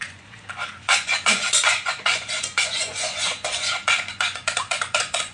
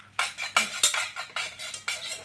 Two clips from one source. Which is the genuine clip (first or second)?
second